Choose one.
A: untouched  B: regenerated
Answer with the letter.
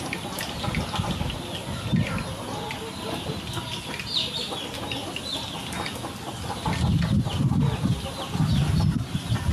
A